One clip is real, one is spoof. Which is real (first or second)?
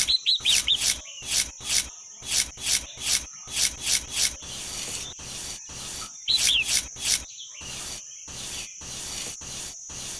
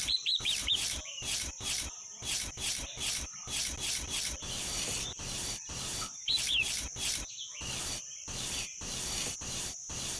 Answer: first